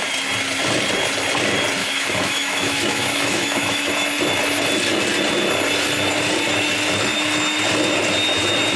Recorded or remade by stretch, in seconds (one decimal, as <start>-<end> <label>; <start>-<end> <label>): 0.0-1.8 recorded; 1.8-3.9 remade; 3.9-8.8 recorded